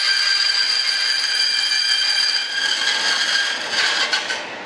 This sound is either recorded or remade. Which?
recorded